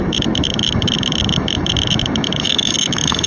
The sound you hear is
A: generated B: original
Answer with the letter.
A